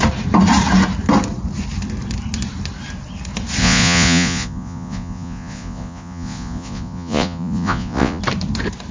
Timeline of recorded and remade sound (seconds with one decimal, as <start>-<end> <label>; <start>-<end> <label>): 0.0-3.6 recorded; 3.6-8.2 remade; 8.2-8.9 recorded